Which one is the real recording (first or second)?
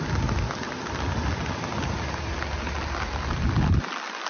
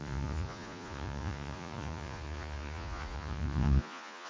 first